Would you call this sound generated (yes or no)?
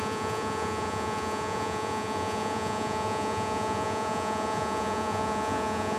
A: yes